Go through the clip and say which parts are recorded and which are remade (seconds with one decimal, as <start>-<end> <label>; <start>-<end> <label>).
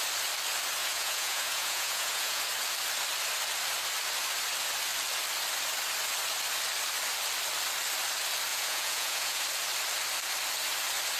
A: 0.0-0.8 recorded; 0.8-2.4 remade; 2.4-8.5 recorded; 8.5-9.4 remade; 9.4-11.2 recorded